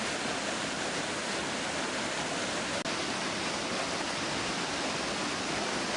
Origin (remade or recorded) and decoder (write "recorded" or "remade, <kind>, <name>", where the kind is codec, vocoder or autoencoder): recorded